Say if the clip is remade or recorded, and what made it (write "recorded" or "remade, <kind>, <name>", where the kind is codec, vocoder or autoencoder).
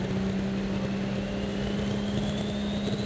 recorded